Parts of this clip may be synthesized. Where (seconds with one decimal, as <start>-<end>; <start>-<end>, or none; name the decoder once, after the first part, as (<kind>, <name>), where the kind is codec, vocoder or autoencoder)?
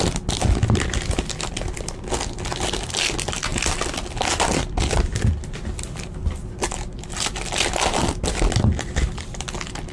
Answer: none